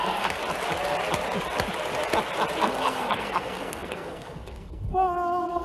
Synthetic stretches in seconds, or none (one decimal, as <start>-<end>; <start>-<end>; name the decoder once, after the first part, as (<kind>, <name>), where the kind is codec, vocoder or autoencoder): 0.0-0.4 (codec, SNAC); 2.6-5.6